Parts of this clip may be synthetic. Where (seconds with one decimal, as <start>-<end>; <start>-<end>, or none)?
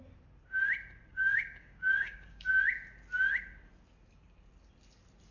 1.1-2.5